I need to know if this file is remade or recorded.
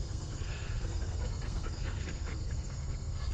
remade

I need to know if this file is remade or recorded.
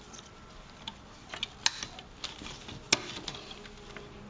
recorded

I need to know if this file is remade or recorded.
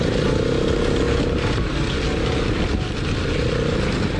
recorded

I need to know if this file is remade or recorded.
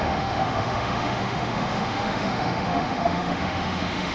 remade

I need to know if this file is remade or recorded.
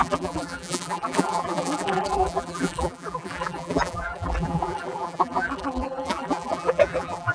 remade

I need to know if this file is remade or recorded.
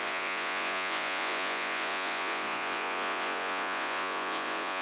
remade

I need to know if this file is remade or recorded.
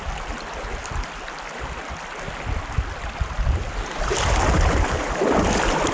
recorded